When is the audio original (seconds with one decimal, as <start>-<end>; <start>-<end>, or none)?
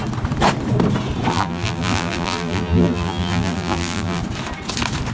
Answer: 0.0-1.3; 4.2-5.1